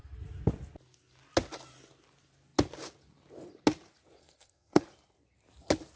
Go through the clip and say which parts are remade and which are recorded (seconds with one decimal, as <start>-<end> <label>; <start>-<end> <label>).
0.0-4.2 recorded; 4.2-4.8 remade; 4.8-6.0 recorded